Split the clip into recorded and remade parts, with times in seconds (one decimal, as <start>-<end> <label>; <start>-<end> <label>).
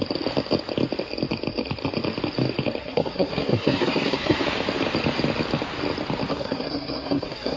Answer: 0.0-2.8 recorded; 2.8-4.4 remade; 4.4-6.3 recorded; 6.3-7.6 remade